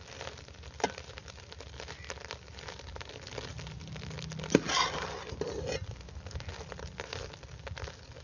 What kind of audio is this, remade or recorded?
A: recorded